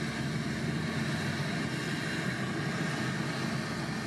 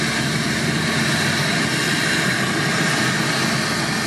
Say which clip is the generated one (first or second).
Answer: second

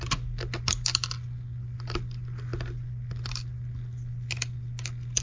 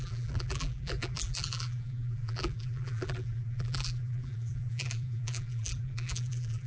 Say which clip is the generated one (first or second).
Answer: second